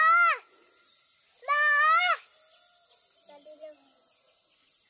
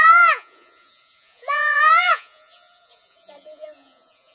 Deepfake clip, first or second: second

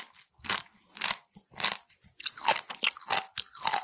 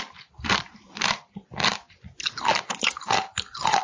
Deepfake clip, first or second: second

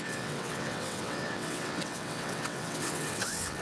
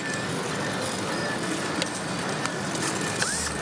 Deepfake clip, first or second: first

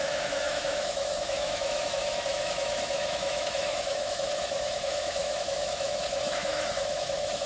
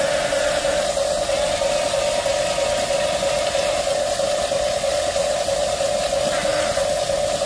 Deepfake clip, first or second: first